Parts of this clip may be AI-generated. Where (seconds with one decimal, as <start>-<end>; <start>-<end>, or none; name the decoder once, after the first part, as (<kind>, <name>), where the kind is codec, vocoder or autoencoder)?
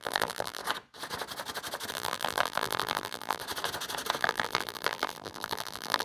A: 0.0-0.6 (vocoder, BigVGAN v2); 1.9-3.4; 4.2-6.0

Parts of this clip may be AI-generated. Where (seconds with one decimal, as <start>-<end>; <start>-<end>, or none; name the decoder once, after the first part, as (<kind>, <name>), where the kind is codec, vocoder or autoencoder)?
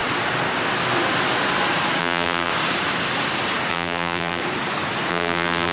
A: 2.0-2.5 (vocoder, BigVGAN v2); 3.7-4.4; 5.1-5.7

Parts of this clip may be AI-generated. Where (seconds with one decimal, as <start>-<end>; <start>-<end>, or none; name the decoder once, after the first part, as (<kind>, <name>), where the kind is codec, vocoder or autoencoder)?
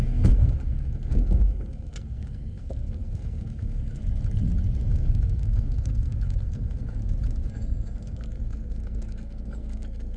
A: 0.0-4.0 (codec, SNAC); 4.9-7.0; 7.5-10.2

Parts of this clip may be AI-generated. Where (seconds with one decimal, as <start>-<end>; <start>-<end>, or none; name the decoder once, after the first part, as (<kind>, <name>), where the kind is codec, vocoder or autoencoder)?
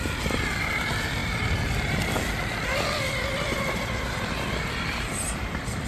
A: none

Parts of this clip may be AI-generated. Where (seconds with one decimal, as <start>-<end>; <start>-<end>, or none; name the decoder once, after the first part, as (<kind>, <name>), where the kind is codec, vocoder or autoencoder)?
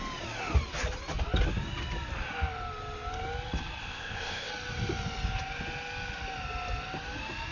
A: 3.8-4.5 (codec, ZipCodec)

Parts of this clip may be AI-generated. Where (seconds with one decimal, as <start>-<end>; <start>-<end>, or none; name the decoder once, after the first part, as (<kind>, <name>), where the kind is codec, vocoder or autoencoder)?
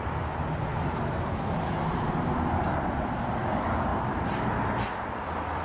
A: 0.7-1.6 (vocoder, BigVGAN v2); 3.9-4.5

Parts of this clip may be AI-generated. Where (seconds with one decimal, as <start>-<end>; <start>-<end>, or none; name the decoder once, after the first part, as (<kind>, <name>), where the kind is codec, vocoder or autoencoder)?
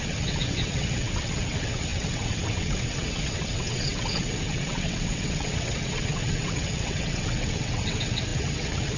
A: 0.0-9.0 (vocoder, WaveNeXt)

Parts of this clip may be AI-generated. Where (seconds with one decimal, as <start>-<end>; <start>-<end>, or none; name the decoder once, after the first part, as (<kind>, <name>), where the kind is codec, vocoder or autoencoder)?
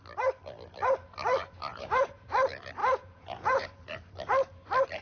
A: 1.7-2.3 (vocoder, Vocos); 2.8-3.8